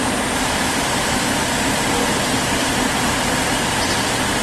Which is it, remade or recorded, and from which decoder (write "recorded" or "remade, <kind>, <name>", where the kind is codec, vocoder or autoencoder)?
recorded